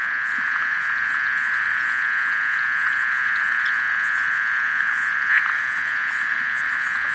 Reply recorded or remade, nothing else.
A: remade